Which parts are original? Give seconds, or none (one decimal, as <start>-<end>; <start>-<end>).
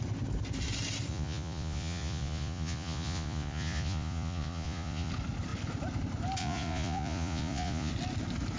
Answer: 0.0-1.1; 5.1-6.4; 7.9-8.6